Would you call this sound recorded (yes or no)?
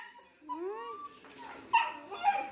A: yes